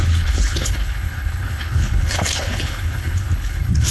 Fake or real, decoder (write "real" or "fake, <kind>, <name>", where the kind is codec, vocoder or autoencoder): fake, codec, HILCodec